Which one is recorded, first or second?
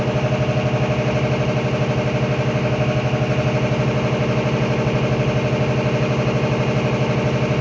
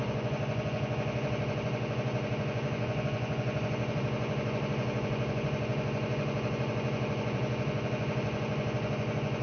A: first